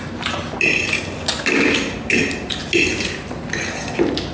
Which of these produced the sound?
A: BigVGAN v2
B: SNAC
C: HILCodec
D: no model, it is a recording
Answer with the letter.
A